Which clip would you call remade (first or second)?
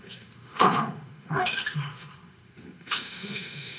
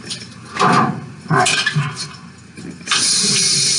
first